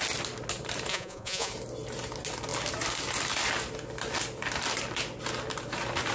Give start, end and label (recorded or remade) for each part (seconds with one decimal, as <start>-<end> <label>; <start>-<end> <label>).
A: 0.0-0.9 recorded; 0.9-1.5 remade; 1.5-6.1 recorded